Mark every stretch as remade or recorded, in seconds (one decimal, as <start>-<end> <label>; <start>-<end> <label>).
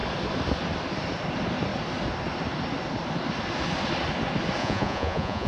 0.0-4.6 recorded; 4.6-5.5 remade